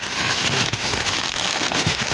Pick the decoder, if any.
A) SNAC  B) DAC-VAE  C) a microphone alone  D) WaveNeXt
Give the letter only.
B